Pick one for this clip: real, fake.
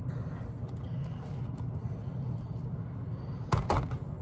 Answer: real